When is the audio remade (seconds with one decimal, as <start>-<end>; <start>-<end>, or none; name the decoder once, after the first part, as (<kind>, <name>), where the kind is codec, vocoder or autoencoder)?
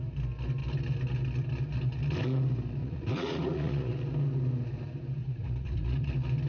2.8-4.0 (vocoder, Vocos); 5.2-6.1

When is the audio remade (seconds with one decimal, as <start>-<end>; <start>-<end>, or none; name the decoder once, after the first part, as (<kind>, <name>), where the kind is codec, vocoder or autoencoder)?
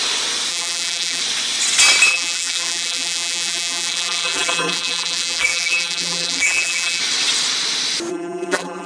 0.5-1.2 (vocoder, BigVGAN v2); 2.1-7.0; 8.1-8.9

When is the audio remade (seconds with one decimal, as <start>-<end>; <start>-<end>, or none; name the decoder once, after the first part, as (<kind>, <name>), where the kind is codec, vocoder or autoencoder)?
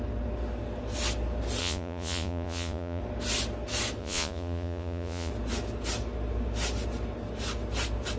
1.6-3.0 (vocoder, Vocos); 4.0-5.3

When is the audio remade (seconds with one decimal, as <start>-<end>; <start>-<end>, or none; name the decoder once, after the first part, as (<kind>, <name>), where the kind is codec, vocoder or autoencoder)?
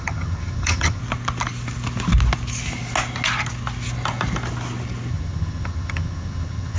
0.0-1.0 (vocoder, HiFi-GAN); 5.1-6.8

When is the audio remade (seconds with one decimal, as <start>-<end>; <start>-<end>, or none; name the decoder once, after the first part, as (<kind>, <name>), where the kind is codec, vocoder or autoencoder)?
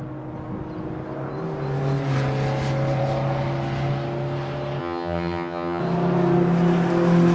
4.8-5.8 (vocoder, HiFi-GAN)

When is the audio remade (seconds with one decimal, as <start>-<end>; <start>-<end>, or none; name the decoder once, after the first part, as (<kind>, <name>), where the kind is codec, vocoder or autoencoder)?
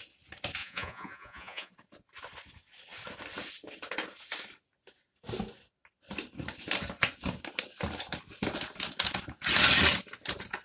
0.6-1.7 (vocoder, Vocos)